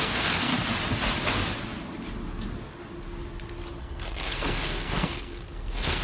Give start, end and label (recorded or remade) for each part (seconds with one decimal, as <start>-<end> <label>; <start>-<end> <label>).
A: 0.0-0.5 remade; 0.5-3.8 recorded; 3.8-6.0 remade